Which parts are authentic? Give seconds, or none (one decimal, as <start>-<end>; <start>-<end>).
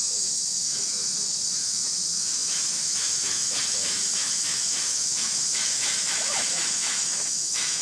none